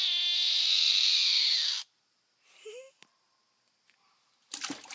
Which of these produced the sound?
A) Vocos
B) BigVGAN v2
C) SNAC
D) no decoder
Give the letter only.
D